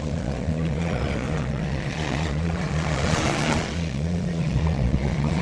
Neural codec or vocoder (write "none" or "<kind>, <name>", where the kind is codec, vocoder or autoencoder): vocoder, Vocos